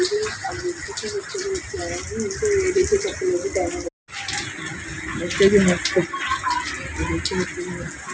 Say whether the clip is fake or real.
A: real